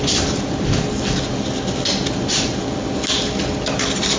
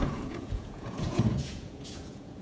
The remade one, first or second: second